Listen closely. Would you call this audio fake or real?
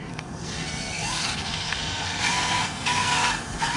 fake